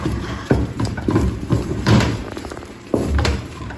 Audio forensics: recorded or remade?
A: remade